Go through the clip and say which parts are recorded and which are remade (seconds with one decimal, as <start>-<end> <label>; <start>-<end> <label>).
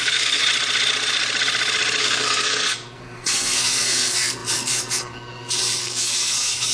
0.0-0.4 remade; 0.4-2.0 recorded; 2.0-6.7 remade